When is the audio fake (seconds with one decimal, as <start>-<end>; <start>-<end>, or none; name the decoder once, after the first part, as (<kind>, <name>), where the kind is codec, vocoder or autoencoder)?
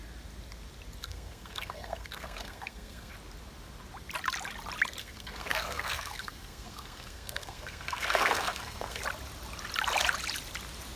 1.0-3.1 (codec, SNAC); 5.0-9.0